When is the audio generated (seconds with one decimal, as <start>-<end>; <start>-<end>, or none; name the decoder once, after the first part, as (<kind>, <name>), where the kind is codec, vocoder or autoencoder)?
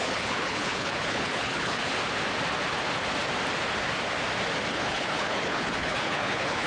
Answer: 0.0-1.9 (codec, HILCodec); 4.7-6.7